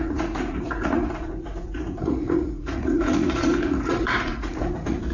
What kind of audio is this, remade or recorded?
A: remade